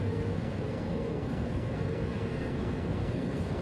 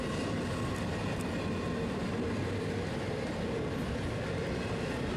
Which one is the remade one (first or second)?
first